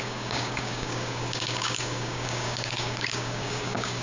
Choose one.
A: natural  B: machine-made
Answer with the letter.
B